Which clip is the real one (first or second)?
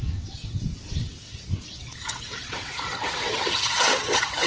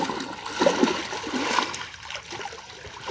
second